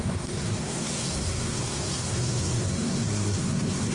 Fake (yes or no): yes